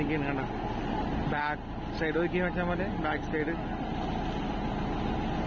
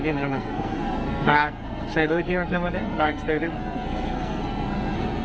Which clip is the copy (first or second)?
second